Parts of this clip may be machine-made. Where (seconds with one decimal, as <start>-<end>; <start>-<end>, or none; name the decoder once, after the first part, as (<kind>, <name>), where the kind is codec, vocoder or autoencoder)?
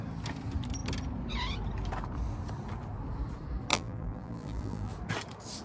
3.7-4.9 (vocoder, BigVGAN v2)